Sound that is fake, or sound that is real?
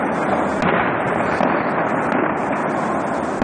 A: real